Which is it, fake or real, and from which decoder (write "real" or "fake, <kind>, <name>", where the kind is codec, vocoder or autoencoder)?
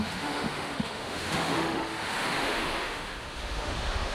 fake, autoencoder, DAC-VAE